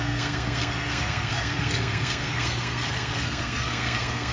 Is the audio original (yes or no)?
no